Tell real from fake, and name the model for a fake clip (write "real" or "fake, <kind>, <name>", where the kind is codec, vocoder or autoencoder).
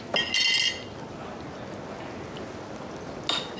real